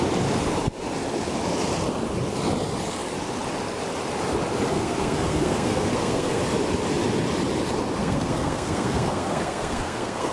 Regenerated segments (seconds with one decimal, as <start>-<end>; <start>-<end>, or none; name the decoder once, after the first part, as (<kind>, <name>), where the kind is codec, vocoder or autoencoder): 4.7-6.4 (codec, SNAC); 8.0-10.3